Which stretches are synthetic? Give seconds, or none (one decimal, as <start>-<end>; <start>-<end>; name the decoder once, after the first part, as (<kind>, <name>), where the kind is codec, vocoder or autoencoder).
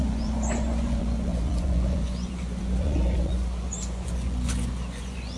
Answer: 0.0-5.4 (vocoder, Vocos)